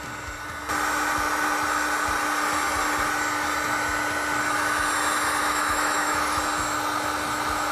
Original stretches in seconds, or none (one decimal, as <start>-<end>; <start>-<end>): 0.0-5.4; 6.4-7.7